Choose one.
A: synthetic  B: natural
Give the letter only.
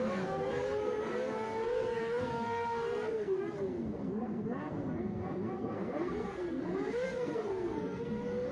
A